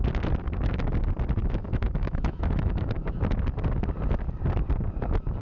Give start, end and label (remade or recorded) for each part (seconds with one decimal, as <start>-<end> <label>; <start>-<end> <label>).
0.0-1.4 recorded; 1.4-3.2 remade; 3.2-5.4 recorded